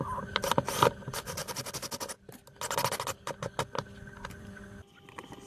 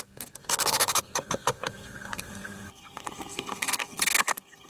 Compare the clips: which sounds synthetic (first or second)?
second